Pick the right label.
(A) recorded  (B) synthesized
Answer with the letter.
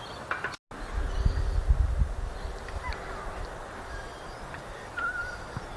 A